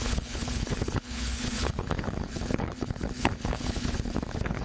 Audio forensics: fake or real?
fake